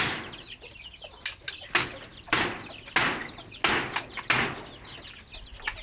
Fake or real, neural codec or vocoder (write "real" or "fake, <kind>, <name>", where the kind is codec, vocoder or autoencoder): real